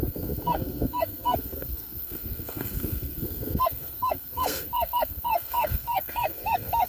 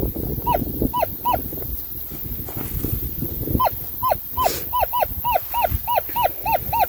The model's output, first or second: first